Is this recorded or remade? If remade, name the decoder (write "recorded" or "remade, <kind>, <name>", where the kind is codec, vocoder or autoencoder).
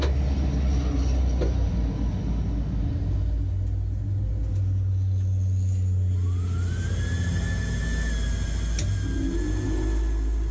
recorded